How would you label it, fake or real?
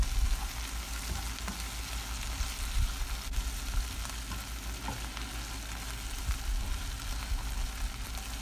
real